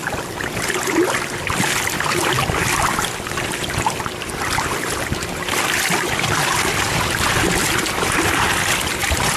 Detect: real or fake real